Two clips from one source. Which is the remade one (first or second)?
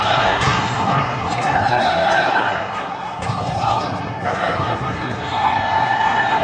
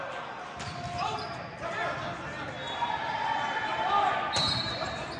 first